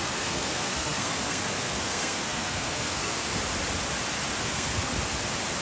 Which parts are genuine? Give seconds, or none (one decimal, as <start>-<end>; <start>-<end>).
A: 3.4-4.4; 4.9-5.6